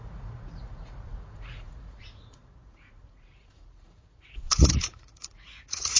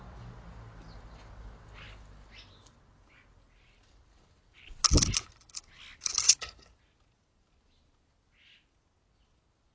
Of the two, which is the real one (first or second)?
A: second